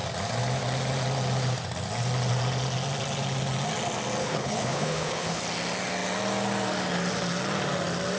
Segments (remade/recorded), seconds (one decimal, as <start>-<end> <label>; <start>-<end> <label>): 0.0-4.2 recorded; 4.2-5.4 remade; 5.4-8.2 recorded